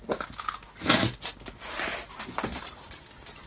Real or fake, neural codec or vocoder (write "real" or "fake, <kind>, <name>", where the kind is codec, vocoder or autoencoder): real